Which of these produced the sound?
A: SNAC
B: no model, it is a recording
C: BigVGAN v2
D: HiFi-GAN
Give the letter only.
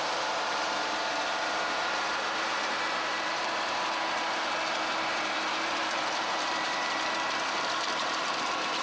C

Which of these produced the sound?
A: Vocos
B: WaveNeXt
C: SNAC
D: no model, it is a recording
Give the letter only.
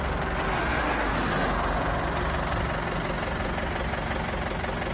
D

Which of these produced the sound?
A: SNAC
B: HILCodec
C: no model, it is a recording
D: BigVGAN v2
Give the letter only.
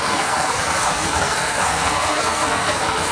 A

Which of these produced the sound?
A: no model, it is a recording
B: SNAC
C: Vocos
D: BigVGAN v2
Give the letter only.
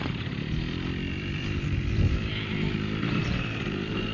D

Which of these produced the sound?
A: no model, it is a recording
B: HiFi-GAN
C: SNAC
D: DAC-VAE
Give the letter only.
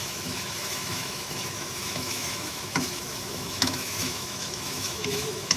D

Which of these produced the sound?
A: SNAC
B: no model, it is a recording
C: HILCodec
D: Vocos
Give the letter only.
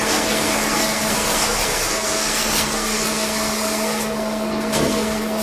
A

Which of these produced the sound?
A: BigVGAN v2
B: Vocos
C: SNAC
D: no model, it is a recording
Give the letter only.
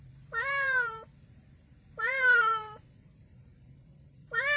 A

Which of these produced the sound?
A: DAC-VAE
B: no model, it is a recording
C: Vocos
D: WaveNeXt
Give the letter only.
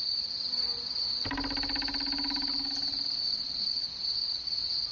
B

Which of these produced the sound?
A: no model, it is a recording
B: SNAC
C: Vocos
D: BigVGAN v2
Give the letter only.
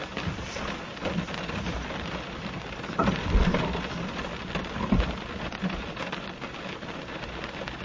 A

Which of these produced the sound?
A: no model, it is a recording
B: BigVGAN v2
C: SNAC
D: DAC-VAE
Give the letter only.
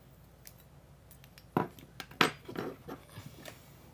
A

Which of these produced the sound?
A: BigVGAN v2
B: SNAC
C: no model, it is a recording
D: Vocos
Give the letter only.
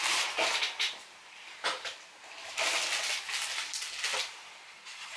C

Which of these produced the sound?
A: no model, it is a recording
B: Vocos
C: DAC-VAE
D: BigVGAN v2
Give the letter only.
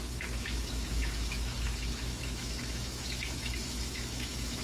C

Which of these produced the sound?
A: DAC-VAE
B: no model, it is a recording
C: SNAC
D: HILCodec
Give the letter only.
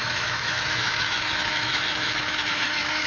A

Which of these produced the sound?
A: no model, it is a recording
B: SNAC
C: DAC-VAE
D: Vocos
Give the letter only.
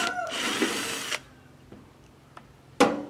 A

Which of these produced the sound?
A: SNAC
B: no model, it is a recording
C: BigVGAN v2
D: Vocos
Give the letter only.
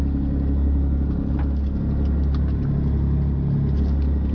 B